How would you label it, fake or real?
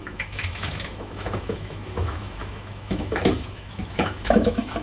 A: fake